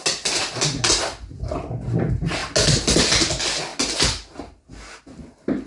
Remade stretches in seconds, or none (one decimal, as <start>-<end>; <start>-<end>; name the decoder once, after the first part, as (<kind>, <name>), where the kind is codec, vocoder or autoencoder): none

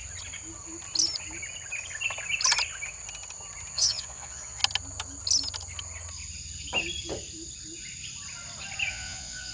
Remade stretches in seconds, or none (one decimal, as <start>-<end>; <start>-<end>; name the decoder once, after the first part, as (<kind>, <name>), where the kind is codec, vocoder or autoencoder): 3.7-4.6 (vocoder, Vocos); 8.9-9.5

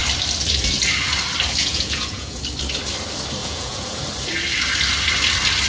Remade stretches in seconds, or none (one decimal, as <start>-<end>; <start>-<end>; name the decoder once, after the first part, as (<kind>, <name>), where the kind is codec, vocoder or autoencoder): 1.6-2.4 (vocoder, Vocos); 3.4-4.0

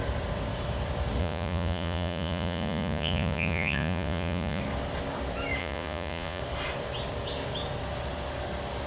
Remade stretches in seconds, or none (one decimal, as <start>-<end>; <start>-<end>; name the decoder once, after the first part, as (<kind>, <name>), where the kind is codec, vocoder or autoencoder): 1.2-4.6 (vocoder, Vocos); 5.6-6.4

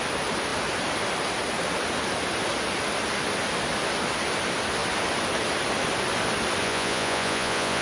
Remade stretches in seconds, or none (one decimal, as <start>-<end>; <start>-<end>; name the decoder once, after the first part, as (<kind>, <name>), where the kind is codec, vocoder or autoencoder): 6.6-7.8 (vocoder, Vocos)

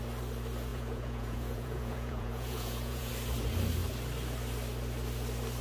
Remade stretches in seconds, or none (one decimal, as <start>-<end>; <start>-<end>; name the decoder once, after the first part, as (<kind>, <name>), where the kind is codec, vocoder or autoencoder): 0.7-3.1 (vocoder, Vocos)

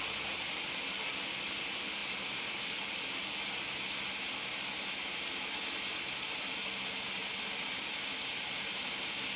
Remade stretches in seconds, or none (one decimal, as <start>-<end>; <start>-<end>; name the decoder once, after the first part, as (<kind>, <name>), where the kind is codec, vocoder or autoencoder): none

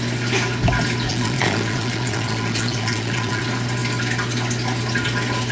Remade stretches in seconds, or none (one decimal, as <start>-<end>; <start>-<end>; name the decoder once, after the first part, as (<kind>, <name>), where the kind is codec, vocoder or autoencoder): 1.1-3.4 (vocoder, Vocos)